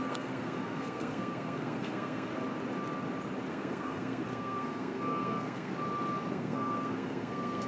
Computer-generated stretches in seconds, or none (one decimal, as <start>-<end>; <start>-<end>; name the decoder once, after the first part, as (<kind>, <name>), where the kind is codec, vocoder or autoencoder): 0.0-2.3 (codec, SNAC); 3.5-5.7; 6.3-7.7